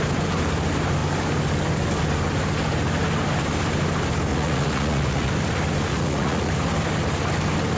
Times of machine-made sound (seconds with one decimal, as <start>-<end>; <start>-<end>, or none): 4.3-5.3; 5.9-6.5